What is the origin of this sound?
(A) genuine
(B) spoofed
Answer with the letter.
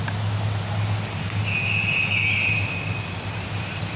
A